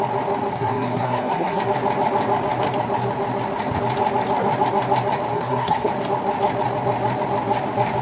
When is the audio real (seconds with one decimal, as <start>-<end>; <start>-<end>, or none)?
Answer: 0.0-0.5; 1.6-5.3; 5.9-8.0